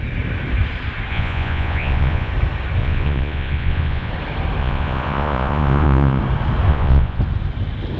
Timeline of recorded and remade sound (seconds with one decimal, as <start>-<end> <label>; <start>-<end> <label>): 0.0-1.1 recorded; 1.1-2.3 remade; 2.3-2.8 recorded; 2.8-4.1 remade; 4.1-4.6 recorded; 4.6-6.2 remade; 6.2-6.7 recorded; 6.7-7.2 remade; 7.2-8.0 recorded